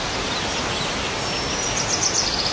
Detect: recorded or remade recorded